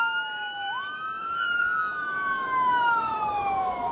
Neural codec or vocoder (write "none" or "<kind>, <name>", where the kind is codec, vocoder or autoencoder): autoencoder, DAC-VAE